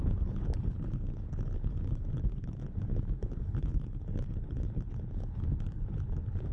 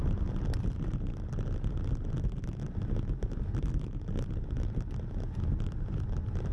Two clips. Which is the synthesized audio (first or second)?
first